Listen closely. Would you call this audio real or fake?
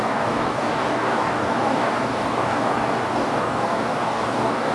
fake